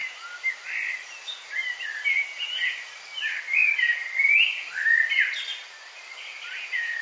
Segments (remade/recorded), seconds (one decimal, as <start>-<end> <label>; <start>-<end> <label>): 0.0-7.0 recorded